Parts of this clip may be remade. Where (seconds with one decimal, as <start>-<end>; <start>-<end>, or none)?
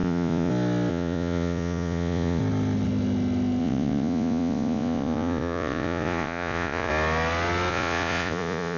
0.0-0.5; 0.9-2.4; 3.6-6.9; 7.7-8.8